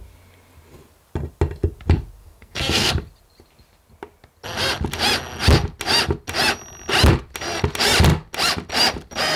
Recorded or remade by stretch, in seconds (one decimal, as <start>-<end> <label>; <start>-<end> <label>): 0.0-2.2 recorded; 2.2-2.9 remade; 2.9-9.4 recorded